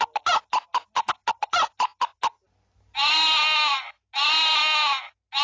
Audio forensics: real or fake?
real